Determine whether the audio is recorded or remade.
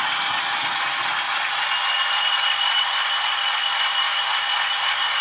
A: recorded